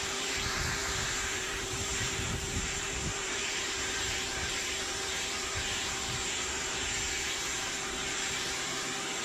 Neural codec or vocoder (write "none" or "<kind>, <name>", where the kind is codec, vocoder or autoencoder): vocoder, BigVGAN v2